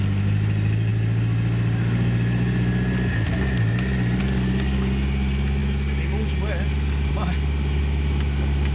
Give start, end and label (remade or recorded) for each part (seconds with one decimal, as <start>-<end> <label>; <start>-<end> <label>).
0.0-5.6 recorded; 5.6-7.1 remade; 7.1-8.7 recorded